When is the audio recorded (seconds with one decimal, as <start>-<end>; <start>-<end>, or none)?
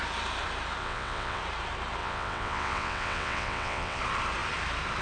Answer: 0.0-0.8; 1.4-2.0; 4.0-5.0